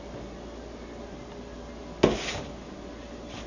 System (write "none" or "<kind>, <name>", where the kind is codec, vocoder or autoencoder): none